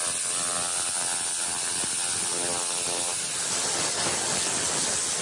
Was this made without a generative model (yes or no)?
yes